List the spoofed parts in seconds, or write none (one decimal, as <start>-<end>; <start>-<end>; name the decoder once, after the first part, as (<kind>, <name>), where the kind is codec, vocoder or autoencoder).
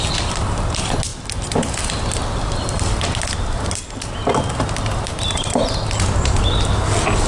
none